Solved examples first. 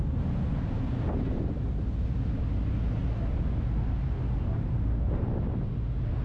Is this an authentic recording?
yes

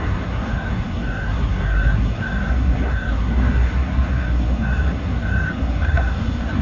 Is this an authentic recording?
no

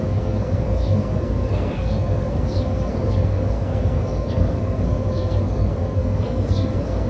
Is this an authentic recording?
no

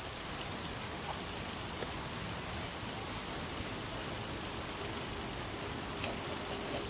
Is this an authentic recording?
yes